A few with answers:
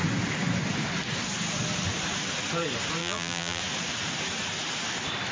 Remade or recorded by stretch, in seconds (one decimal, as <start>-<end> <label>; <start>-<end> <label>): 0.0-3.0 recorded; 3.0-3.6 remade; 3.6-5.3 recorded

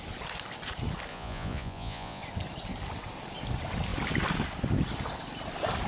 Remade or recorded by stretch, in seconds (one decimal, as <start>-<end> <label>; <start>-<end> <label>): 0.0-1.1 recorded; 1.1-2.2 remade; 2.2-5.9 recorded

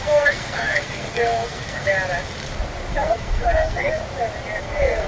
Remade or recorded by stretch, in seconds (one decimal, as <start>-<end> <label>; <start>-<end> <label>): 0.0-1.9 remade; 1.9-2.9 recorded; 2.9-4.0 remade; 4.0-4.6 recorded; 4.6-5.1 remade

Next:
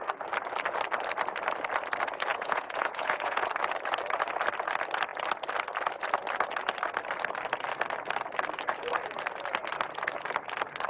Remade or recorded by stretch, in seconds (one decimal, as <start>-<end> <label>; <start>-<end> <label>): 0.0-2.3 recorded; 2.3-3.5 remade; 3.5-10.9 recorded

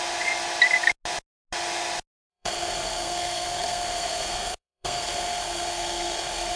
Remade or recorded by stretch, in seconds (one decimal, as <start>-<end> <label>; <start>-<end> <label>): 0.0-2.3 recorded; 2.3-6.6 remade

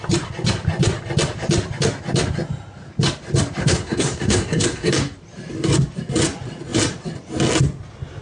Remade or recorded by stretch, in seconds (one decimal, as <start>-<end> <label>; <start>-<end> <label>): 0.0-3.6 recorded; 3.6-4.9 remade; 4.9-8.2 recorded